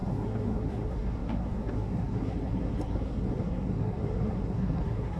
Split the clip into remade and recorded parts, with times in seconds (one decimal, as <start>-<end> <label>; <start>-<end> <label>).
0.0-5.2 remade